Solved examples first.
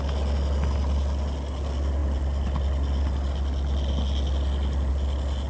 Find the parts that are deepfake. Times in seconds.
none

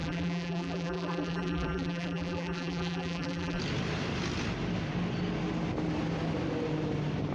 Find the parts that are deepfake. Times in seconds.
0.0-3.6 (vocoder, BigVGAN v2)